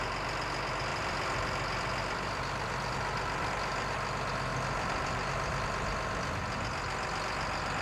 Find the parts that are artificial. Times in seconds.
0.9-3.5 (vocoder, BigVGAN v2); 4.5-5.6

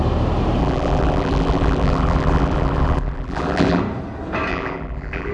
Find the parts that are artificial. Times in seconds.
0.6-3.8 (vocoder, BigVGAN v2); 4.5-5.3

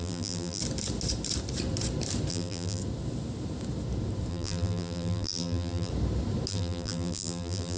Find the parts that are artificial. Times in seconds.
0.0-0.6 (vocoder, BigVGAN v2); 2.3-2.8; 4.3-5.9; 6.5-7.8